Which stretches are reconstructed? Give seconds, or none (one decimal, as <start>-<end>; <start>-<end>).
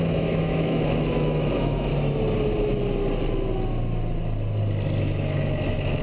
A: 0.0-1.9; 5.0-6.0